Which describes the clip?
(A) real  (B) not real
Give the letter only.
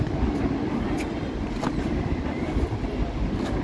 A